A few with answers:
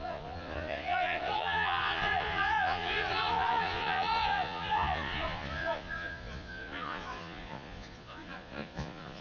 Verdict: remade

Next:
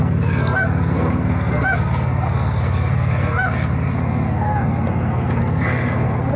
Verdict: remade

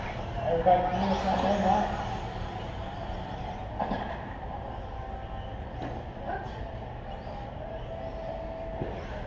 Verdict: recorded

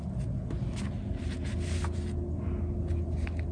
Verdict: recorded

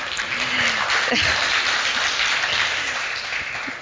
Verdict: recorded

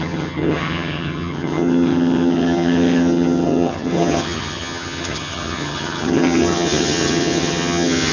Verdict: remade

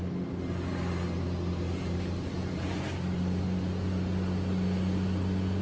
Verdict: recorded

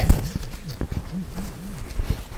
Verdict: recorded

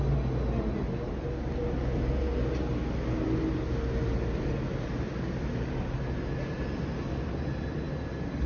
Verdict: recorded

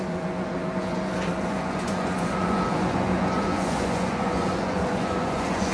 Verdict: remade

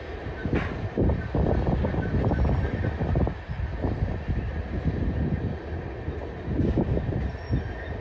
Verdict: recorded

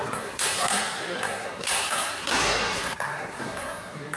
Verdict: remade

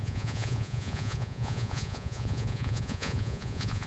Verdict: remade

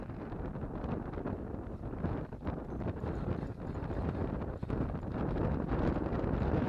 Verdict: recorded